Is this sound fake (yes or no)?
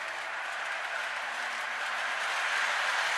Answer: no